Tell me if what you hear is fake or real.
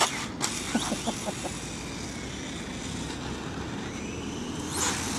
real